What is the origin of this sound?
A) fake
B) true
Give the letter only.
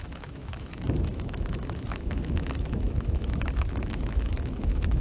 A